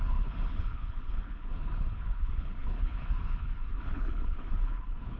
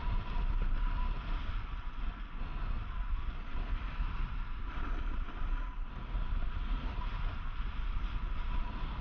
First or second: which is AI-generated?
first